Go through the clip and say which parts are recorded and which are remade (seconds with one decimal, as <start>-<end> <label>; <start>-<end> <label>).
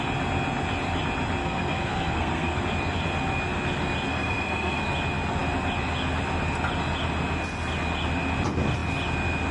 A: 0.0-1.4 recorded; 1.4-2.6 remade; 2.6-4.1 recorded; 4.1-4.8 remade; 4.8-9.5 recorded